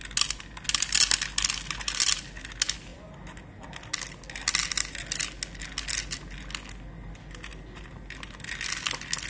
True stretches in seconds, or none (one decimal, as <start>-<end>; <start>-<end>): 0.0-9.3